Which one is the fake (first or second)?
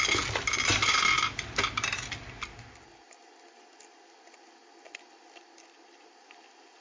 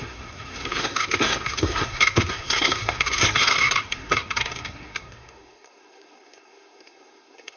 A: second